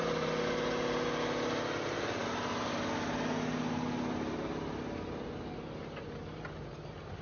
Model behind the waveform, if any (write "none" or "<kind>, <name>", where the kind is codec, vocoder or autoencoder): none